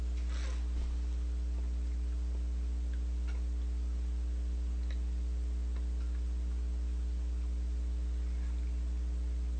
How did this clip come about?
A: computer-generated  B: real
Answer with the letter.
B